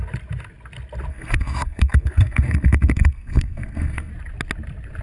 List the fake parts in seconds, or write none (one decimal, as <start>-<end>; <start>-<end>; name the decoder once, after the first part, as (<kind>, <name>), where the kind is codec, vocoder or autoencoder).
1.1-4.1 (codec, SNAC)